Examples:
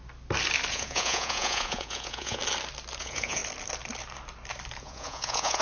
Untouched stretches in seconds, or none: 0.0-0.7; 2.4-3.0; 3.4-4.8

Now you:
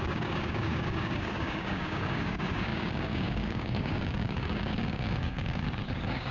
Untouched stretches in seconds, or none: none

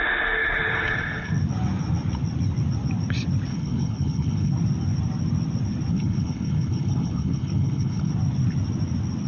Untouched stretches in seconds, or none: 0.0-0.4; 1.3-3.5; 4.5-5.9; 8.1-9.3

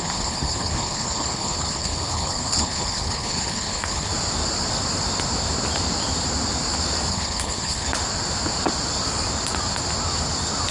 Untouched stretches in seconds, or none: 4.1-7.1; 7.9-10.7

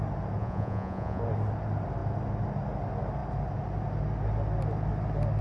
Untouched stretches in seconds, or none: 0.0-0.4; 1.2-5.4

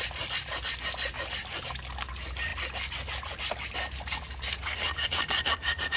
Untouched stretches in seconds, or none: 0.0-6.0

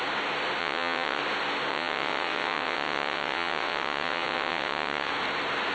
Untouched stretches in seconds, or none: 0.0-0.6; 1.2-1.7; 5.1-5.7